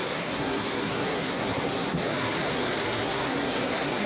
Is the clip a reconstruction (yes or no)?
yes